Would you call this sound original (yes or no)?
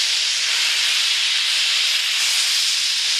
yes